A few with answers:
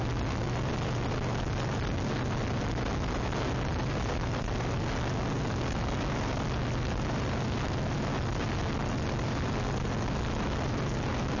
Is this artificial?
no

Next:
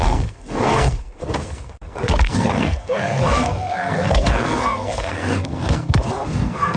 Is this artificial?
yes